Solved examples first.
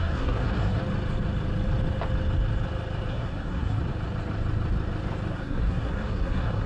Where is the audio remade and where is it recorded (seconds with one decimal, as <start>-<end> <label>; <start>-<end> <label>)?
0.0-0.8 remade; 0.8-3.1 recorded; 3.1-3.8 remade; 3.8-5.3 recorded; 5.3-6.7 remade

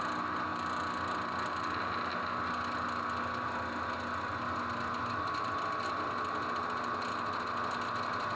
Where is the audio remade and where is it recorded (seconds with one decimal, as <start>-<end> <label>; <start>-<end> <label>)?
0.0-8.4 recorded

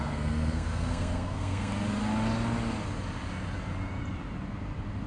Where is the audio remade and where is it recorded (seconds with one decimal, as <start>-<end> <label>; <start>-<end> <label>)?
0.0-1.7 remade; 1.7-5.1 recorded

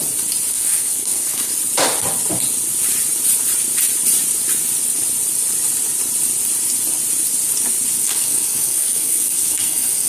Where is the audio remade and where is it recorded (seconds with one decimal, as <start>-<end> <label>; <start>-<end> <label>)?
0.0-0.5 recorded; 0.5-1.5 remade; 1.5-8.0 recorded; 8.0-10.1 remade

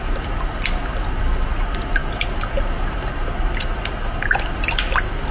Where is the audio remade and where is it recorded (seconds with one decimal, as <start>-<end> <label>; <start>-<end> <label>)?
0.0-5.3 recorded